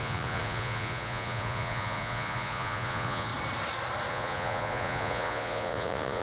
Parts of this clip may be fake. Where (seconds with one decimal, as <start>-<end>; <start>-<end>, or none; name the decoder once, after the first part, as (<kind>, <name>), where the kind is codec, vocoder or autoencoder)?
0.0-3.3 (vocoder, Vocos); 4.1-6.2